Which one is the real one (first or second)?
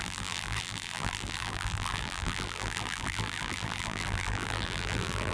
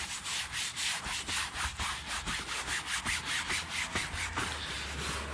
second